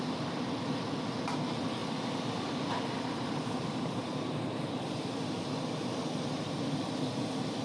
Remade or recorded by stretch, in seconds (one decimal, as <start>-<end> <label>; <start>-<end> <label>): 0.0-7.6 recorded